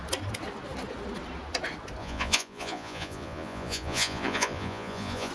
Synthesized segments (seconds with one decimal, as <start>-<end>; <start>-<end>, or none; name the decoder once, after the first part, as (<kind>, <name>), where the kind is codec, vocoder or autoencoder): 2.0-5.3 (vocoder, Vocos)